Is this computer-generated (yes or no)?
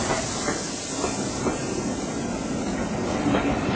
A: no